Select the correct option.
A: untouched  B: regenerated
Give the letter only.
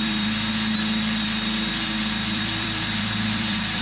B